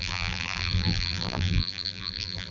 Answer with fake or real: fake